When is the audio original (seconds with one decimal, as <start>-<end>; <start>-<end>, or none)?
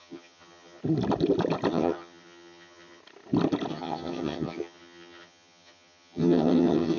0.8-1.7; 3.0-3.7